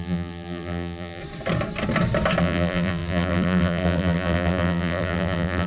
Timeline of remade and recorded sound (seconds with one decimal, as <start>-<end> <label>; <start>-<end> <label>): 0.0-1.2 remade; 1.2-2.4 recorded; 2.4-5.7 remade